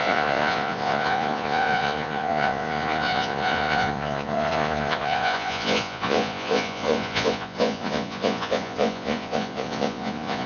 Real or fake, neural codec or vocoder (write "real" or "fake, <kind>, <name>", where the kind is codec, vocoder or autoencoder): fake, vocoder, Vocos